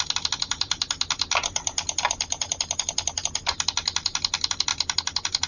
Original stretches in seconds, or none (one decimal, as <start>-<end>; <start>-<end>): 0.0-5.5